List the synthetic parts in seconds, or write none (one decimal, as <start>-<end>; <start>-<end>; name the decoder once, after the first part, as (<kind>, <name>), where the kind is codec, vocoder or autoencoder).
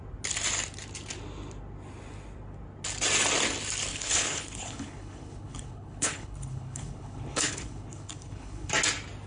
3.9-8.7 (codec, HILCodec)